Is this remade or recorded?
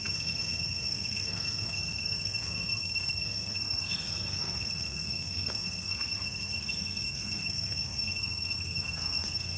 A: remade